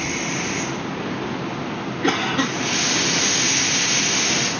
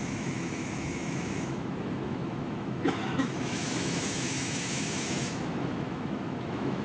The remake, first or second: second